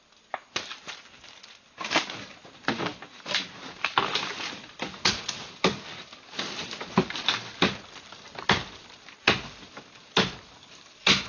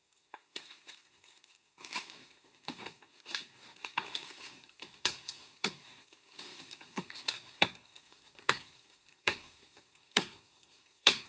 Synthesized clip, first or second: second